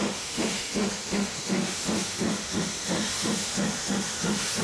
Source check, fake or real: fake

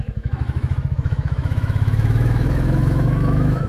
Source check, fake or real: fake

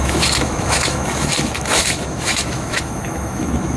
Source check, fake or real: fake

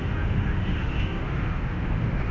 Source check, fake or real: fake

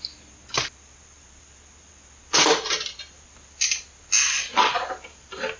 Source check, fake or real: real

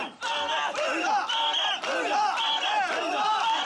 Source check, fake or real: real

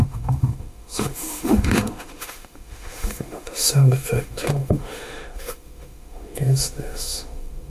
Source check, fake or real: fake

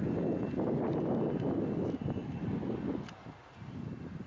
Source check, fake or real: real